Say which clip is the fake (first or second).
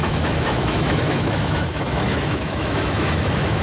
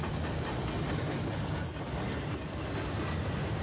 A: first